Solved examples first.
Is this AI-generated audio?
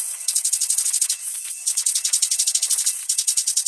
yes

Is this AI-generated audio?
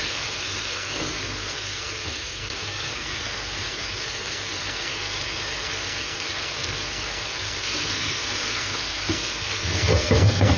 yes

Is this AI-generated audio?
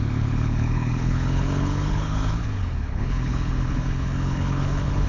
yes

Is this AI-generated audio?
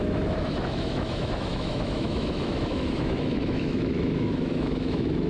yes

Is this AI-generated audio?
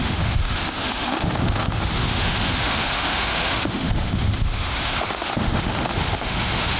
yes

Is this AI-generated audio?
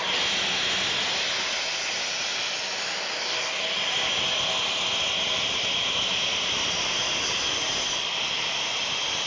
no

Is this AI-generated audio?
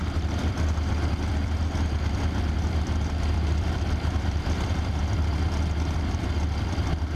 yes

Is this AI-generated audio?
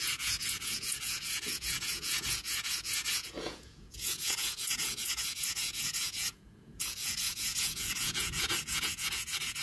yes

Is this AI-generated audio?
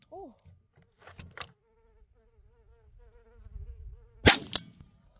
no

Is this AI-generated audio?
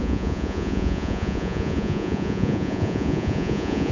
yes